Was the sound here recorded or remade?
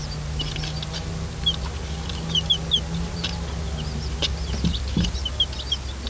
recorded